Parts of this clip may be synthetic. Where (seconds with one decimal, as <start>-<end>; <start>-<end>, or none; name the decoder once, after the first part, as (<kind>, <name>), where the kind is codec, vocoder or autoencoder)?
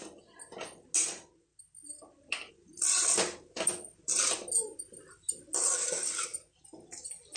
1.5-2.5 (vocoder, BigVGAN v2)